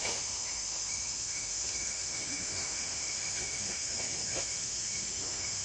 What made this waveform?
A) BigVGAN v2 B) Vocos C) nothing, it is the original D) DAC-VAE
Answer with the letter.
D